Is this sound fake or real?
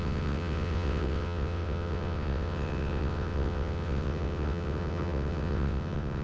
fake